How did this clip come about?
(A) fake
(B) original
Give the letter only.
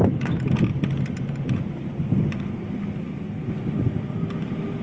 B